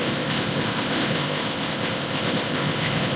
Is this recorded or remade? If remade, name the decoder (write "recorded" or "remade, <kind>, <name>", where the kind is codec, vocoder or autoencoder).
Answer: remade, codec, ZipCodec